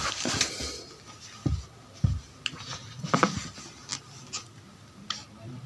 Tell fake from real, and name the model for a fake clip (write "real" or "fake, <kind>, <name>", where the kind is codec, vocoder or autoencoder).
real